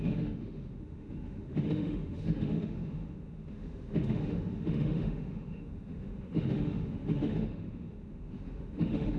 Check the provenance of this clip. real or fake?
fake